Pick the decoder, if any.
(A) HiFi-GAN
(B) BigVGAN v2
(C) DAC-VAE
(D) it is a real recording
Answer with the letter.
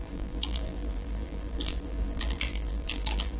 B